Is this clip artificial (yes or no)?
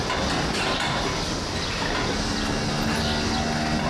no